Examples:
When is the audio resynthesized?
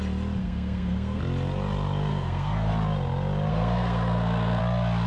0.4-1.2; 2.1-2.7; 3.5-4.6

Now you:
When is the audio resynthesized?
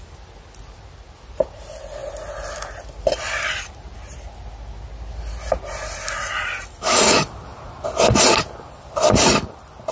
none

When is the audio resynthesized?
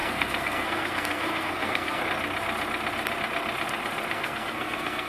0.0-2.0; 4.1-5.1